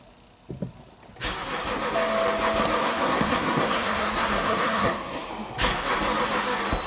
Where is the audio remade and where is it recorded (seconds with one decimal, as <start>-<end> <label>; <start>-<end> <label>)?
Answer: 0.0-2.8 recorded; 2.8-5.3 remade; 5.3-6.9 recorded